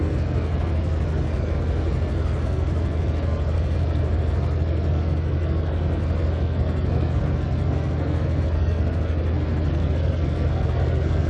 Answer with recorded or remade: remade